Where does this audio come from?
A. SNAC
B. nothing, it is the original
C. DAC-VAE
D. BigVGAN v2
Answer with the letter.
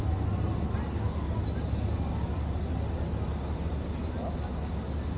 B